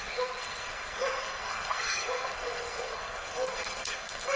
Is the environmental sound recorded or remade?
remade